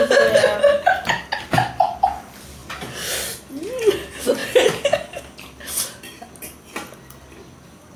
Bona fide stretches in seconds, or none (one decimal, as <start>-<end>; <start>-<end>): 0.0-8.0